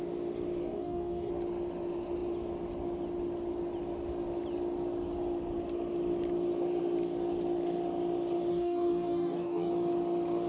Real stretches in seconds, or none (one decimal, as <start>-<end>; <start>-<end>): 0.0-0.6; 1.3-8.5; 9.7-10.5